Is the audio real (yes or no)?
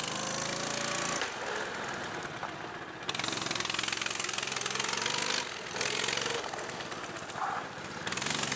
yes